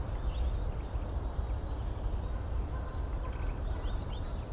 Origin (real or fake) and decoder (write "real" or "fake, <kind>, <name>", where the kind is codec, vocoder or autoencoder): real